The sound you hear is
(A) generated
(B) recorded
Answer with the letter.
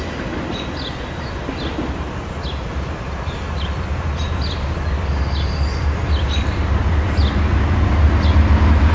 B